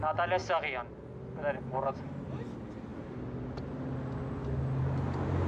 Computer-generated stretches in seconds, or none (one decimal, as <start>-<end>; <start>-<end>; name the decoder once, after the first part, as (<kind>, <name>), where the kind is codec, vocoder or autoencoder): none